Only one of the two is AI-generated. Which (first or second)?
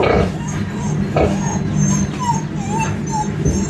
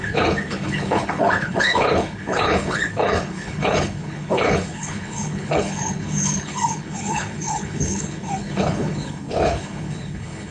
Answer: second